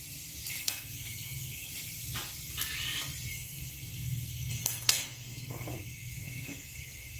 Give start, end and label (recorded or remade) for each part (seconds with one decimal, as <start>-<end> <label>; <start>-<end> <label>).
0.0-0.6 recorded; 0.6-1.7 remade; 1.7-3.3 recorded; 3.3-7.2 remade